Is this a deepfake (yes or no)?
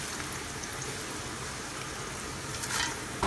no